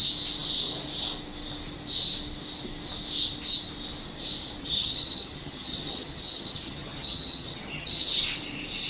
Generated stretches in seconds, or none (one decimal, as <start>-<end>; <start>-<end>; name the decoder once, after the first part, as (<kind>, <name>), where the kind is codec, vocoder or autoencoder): 4.6-8.2 (vocoder, HiFi-GAN)